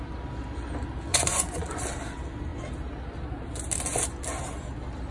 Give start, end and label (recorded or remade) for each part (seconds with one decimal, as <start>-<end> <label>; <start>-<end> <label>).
0.0-1.1 recorded; 1.1-1.8 remade; 1.8-5.1 recorded